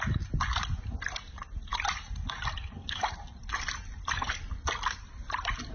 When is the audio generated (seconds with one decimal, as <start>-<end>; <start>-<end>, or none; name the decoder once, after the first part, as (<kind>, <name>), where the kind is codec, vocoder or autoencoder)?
1.7-5.0 (vocoder, BigVGAN v2)